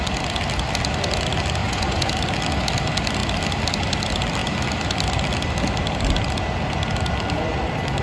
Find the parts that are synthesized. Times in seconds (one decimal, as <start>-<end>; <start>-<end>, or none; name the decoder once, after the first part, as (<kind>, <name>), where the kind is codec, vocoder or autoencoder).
1.6-2.1 (vocoder, Vocos)